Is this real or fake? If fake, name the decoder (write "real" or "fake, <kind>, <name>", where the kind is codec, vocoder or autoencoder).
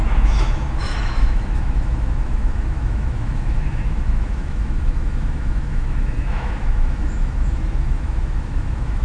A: fake, autoencoder, DAC-VAE